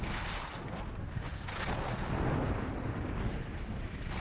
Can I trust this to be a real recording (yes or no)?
yes